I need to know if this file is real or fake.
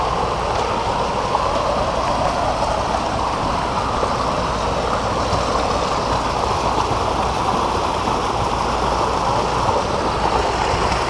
real